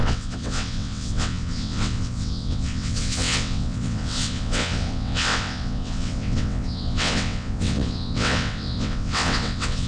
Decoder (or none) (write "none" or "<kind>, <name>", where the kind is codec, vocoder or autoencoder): vocoder, WaveNeXt